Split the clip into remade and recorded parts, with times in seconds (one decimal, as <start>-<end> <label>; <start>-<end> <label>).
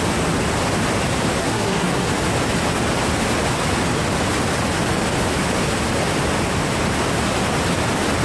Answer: 0.0-1.4 recorded; 1.4-2.1 remade; 2.1-8.2 recorded